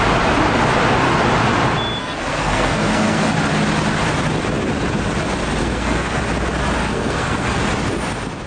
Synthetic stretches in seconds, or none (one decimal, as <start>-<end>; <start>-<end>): 2.0-3.3; 5.6-6.2; 6.8-7.6